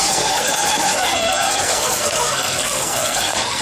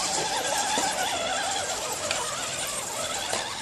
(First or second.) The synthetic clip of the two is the first